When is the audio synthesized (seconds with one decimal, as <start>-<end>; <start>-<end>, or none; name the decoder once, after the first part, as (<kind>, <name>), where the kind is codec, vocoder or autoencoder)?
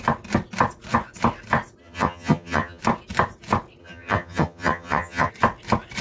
1.8-2.8 (vocoder, HiFi-GAN); 3.8-5.3